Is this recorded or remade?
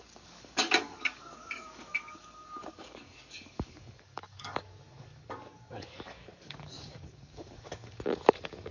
remade